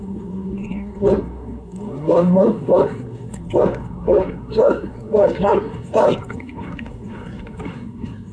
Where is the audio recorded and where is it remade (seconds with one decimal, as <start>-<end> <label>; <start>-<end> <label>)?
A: 0.0-8.3 remade